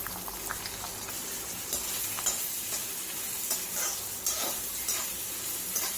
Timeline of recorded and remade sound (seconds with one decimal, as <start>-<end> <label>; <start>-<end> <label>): 0.0-6.0 recorded